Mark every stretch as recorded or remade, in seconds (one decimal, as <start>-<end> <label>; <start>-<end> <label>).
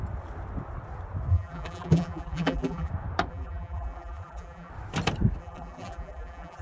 0.0-1.3 recorded; 1.3-2.9 remade; 2.9-3.3 recorded; 3.3-4.7 remade; 4.7-5.4 recorded; 5.4-6.6 remade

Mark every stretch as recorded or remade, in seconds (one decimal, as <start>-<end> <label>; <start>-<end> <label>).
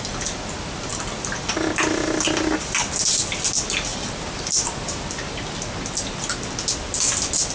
0.0-3.9 recorded; 3.9-5.0 remade; 5.0-7.5 recorded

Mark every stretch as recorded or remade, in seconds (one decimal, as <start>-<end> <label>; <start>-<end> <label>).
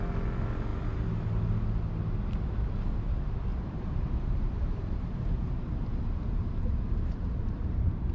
0.0-3.5 recorded; 3.5-8.1 remade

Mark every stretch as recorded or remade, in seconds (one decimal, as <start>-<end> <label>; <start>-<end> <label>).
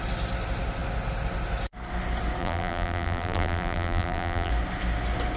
0.0-2.4 recorded; 2.4-4.5 remade; 4.5-5.4 recorded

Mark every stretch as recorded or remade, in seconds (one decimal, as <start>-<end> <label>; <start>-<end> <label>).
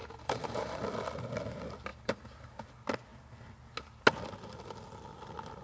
0.0-0.8 remade; 0.8-1.9 recorded; 1.9-2.5 remade; 2.5-5.6 recorded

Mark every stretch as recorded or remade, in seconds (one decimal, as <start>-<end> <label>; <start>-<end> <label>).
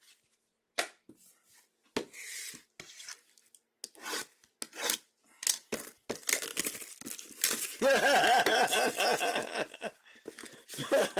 0.0-11.2 recorded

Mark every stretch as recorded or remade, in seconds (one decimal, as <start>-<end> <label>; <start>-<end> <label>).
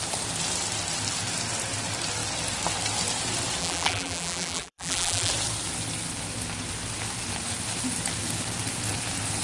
0.0-3.6 recorded; 3.6-5.3 remade; 5.3-9.4 recorded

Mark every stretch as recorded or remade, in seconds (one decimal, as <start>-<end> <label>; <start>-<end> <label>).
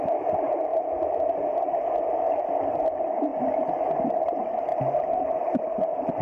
0.0-0.7 recorded; 0.7-2.4 remade; 2.4-3.3 recorded; 3.3-4.1 remade; 4.1-6.2 recorded